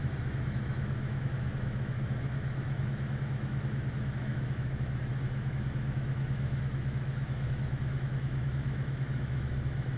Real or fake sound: fake